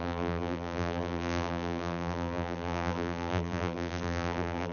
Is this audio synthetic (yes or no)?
yes